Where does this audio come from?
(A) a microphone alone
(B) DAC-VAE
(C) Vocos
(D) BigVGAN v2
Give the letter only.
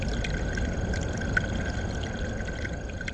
A